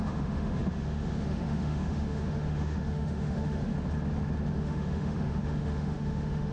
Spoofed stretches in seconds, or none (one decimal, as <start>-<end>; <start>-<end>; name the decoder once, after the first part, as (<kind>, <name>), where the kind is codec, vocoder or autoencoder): 0.0-3.7 (autoencoder, DAC-VAE); 4.5-6.5